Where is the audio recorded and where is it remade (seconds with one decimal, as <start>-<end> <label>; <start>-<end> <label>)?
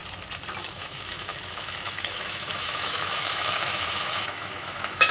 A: 0.0-0.6 recorded; 0.6-5.1 remade